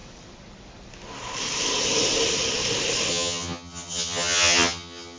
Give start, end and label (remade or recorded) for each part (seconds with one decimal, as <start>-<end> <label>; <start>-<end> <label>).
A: 0.0-3.1 recorded; 3.1-5.2 remade